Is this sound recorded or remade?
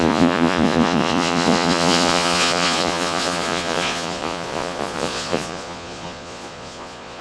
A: remade